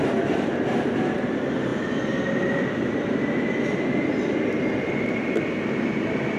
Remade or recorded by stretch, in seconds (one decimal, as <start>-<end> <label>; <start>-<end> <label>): 0.0-6.4 recorded